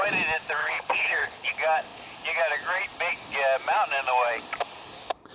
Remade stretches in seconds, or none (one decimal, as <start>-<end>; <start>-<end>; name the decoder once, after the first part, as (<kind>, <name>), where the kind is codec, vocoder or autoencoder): 0.6-1.5 (codec, HILCodec)

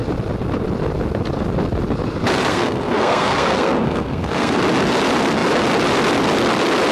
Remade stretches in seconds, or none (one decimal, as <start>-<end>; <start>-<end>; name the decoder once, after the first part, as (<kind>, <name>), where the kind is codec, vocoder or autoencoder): 2.5-4.6 (codec, SNAC)

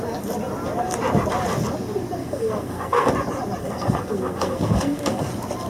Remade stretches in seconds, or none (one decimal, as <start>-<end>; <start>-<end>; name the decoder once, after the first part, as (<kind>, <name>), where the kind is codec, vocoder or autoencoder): 2.2-3.1 (codec, SNAC); 3.6-5.3

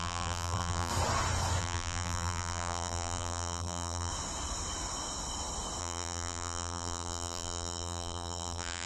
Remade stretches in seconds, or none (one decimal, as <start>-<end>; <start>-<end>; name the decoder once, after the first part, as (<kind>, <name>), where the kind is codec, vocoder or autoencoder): 0.0-0.9 (vocoder, BigVGAN v2); 1.6-4.1; 5.8-8.9

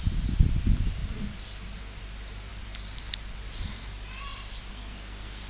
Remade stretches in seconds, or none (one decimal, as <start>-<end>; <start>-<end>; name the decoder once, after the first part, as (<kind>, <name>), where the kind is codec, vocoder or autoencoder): 4.7-5.5 (codec, SNAC)

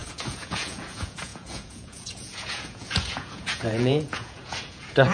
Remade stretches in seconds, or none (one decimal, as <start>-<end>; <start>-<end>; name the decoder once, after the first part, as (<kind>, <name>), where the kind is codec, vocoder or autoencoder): 0.0-5.1 (vocoder, Vocos)

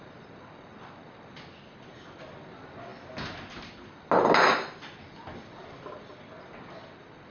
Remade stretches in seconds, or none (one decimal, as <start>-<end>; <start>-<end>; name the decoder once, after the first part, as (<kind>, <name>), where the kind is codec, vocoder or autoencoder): none